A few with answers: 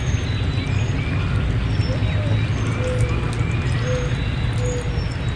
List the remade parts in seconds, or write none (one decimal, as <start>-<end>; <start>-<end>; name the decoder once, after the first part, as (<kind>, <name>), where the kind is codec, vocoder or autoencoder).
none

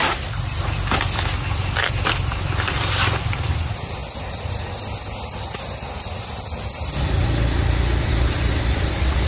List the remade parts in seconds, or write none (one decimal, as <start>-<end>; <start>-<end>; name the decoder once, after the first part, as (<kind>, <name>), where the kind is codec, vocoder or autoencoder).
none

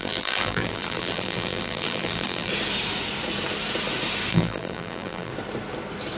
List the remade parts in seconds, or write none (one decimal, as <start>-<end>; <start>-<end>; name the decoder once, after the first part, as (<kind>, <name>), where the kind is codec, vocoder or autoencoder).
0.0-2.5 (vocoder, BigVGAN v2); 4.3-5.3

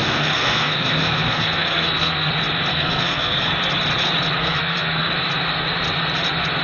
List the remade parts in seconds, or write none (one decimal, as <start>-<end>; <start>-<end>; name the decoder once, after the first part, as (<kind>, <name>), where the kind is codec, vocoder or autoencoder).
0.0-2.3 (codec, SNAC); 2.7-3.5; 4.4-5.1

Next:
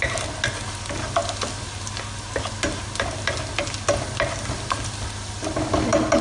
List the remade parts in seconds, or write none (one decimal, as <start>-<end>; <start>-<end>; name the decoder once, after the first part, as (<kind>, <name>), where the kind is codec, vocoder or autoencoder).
none